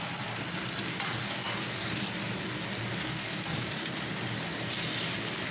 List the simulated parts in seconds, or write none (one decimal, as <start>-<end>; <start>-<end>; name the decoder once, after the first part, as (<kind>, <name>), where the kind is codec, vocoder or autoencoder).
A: 1.2-2.1 (codec, DAC); 3.0-4.0